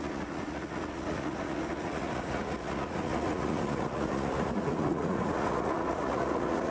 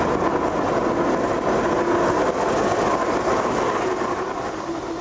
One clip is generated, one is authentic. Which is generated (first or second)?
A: first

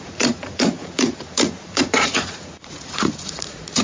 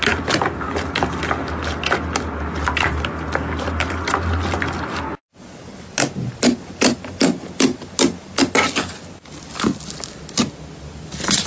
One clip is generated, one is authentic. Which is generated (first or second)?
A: first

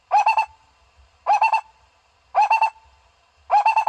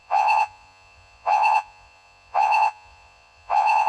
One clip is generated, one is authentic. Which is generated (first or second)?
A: second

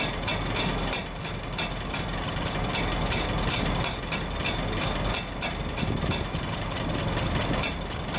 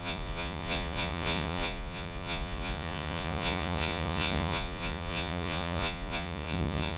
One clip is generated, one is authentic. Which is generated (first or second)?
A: second